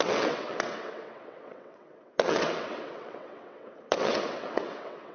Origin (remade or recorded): remade